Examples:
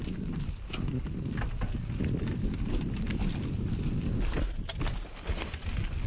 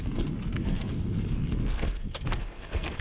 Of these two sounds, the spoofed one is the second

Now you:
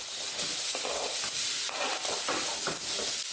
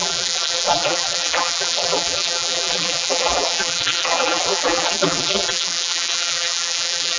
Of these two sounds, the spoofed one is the second